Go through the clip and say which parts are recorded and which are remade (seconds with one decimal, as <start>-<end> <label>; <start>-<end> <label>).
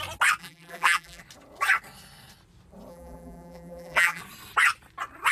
0.0-0.4 recorded; 0.4-1.2 remade; 1.2-2.9 recorded; 2.9-4.2 remade; 4.2-5.3 recorded